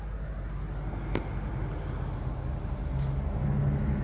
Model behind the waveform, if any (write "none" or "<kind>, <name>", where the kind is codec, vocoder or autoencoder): none